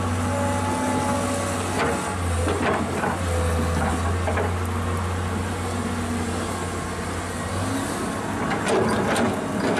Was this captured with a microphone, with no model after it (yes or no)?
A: yes